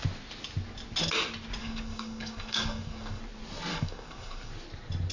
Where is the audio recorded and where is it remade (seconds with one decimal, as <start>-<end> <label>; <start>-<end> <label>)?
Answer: 0.0-1.6 recorded; 1.6-3.2 remade; 3.2-3.7 recorded; 3.7-4.5 remade; 4.5-5.1 recorded